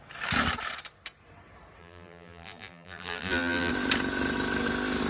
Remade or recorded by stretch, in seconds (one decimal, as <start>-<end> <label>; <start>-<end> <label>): 0.0-1.8 recorded; 1.8-3.7 remade; 3.7-5.1 recorded